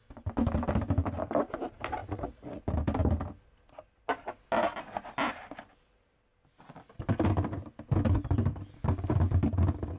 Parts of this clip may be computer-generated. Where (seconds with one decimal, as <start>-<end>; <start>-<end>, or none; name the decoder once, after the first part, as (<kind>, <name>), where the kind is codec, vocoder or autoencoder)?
2.0-2.6 (vocoder, Vocos)